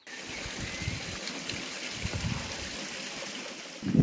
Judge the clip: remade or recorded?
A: recorded